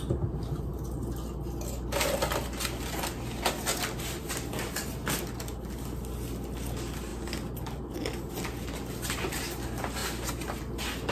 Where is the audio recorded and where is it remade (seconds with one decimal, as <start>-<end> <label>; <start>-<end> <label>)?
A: 0.0-11.1 recorded